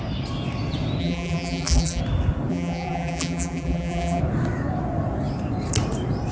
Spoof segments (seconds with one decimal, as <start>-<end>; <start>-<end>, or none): 1.0-2.0; 2.5-4.2